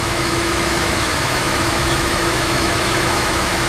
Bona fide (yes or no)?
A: no